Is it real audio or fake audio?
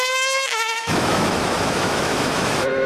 fake